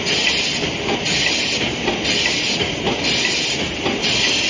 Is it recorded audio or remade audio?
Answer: recorded